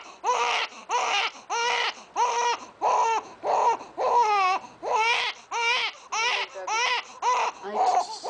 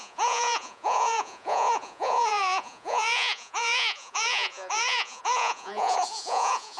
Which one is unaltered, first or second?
first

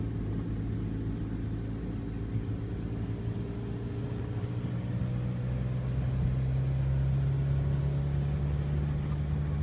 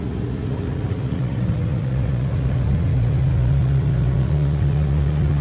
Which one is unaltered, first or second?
first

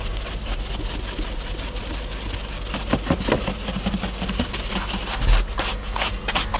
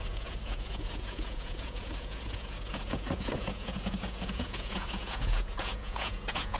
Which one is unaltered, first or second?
first